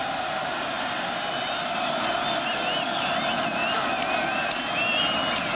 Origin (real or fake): real